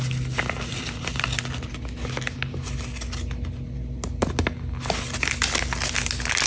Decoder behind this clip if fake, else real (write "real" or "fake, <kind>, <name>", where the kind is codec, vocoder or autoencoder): real